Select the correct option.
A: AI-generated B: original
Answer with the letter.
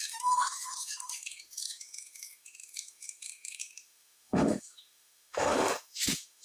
A